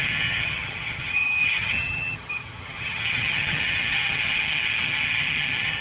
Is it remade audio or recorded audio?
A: remade